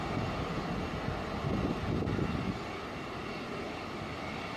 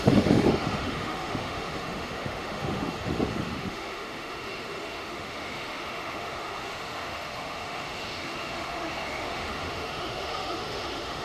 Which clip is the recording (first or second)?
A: first